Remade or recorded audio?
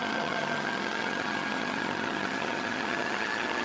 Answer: remade